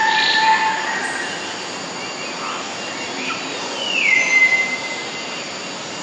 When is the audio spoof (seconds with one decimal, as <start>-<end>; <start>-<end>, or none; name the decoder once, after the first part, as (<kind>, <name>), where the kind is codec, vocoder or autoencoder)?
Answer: 3.6-4.3 (vocoder, Vocos)